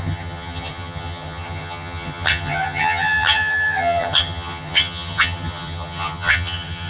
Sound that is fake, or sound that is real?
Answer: fake